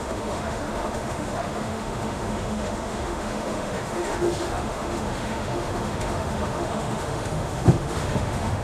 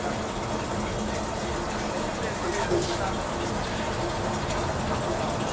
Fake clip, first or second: first